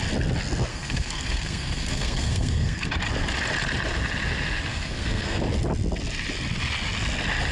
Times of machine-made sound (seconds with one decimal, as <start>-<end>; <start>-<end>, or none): 0.7-2.9; 4.7-5.4